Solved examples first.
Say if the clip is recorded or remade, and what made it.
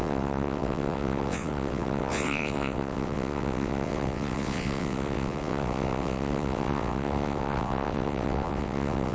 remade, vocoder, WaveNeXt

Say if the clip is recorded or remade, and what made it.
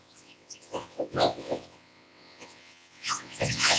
remade, vocoder, WaveNeXt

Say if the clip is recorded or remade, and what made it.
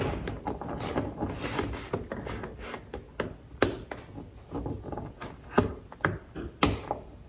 recorded